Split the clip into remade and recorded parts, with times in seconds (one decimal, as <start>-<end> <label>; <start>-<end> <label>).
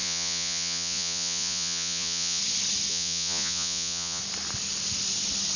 0.0-2.4 remade; 2.4-2.9 recorded; 2.9-4.2 remade; 4.2-5.6 recorded